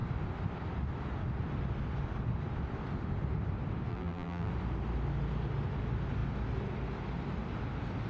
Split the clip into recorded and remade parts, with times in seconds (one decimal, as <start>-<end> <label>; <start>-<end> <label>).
0.0-3.9 recorded; 3.9-4.5 remade; 4.5-8.1 recorded